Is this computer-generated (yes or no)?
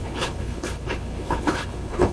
yes